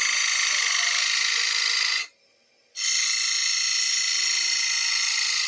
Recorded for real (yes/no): yes